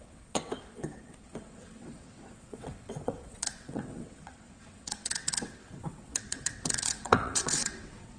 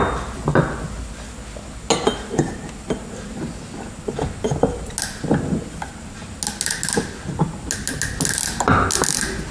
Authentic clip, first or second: second